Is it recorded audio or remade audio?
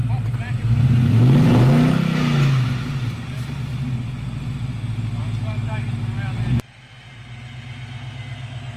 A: recorded